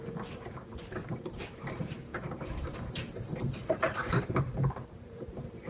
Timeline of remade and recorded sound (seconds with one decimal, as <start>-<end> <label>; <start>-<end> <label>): 0.0-5.7 remade